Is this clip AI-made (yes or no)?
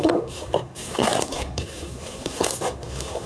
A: yes